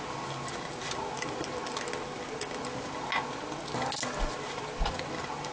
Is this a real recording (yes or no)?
yes